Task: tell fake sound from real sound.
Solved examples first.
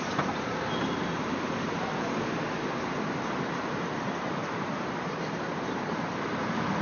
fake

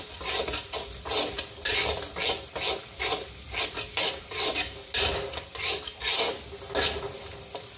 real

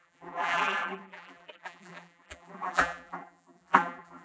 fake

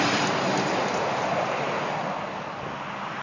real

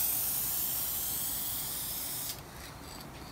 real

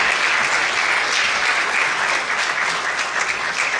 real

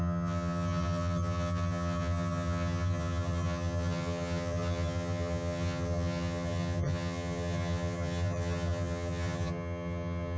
fake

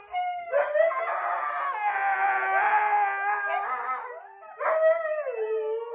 real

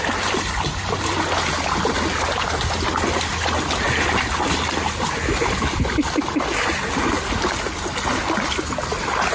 real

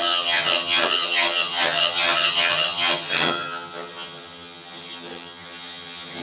fake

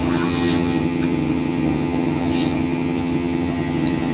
fake